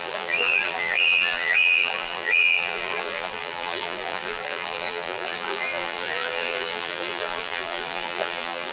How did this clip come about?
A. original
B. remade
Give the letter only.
B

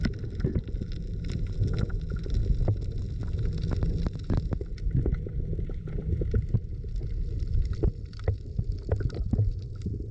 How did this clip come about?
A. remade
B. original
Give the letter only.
B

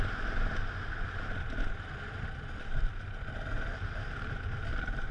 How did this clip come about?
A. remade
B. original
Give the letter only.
B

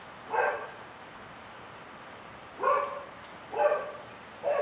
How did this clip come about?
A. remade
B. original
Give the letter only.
B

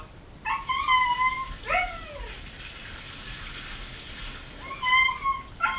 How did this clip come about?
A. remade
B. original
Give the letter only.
B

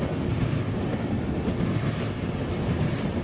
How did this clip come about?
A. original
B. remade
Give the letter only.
A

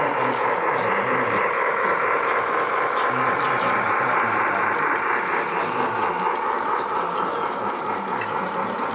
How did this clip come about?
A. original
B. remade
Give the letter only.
B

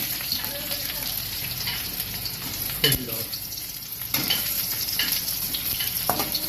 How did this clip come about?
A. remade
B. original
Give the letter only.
A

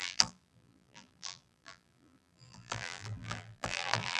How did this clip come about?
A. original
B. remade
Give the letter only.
B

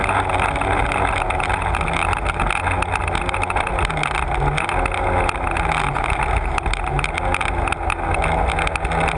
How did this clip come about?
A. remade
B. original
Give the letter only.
B